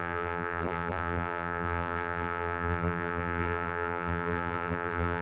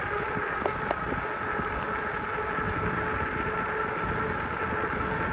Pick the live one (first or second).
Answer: second